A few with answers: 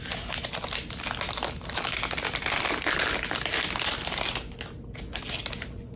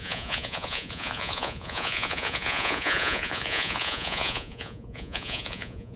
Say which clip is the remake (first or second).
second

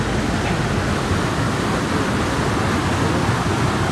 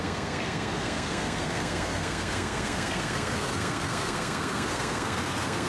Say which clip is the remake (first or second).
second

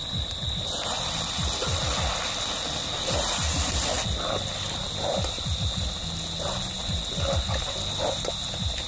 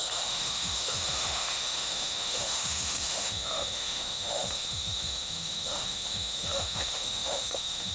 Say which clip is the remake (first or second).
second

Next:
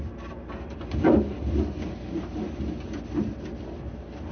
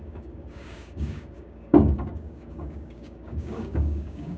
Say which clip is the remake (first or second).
second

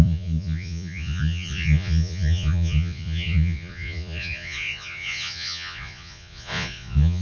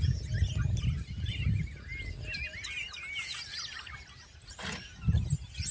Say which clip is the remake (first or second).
first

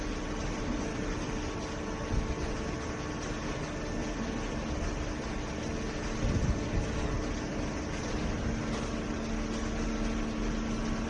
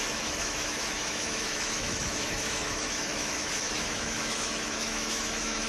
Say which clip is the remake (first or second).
second